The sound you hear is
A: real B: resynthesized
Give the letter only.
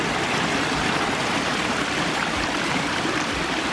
B